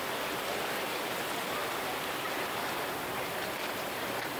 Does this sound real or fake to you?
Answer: fake